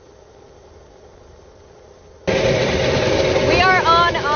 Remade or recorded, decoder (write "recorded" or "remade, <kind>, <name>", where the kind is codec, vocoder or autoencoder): recorded